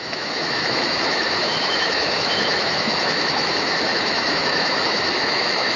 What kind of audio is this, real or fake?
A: fake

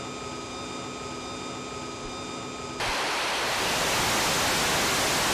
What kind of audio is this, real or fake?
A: real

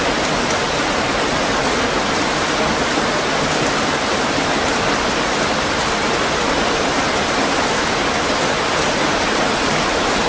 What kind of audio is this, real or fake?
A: real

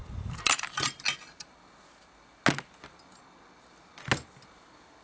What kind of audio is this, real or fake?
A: real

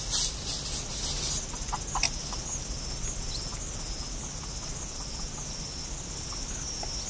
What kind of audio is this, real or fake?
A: real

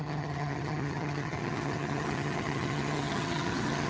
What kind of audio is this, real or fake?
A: fake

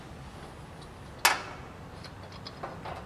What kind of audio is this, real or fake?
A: real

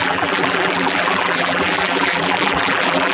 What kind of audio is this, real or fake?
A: fake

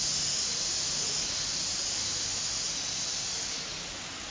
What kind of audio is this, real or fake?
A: real